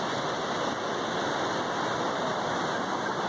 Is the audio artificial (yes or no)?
no